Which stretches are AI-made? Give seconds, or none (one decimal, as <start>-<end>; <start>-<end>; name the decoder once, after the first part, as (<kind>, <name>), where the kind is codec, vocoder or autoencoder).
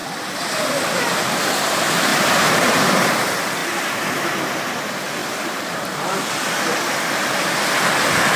0.0-0.7 (vocoder, BigVGAN v2); 2.1-3.0; 3.6-4.4; 5.2-6.3